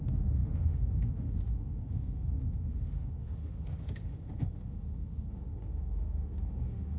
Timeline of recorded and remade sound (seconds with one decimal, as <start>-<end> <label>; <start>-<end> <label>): 0.0-7.0 remade